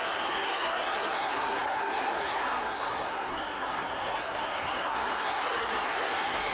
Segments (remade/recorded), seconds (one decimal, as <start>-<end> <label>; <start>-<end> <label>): 0.0-6.5 remade